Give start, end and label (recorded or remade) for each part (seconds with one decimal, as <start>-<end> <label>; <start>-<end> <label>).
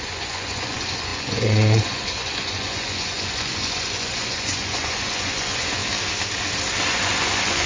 0.0-5.8 remade; 5.8-6.9 recorded; 6.9-7.7 remade